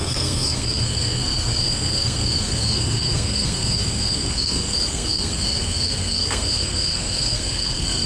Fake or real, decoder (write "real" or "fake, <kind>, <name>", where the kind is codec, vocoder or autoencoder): fake, codec, SNAC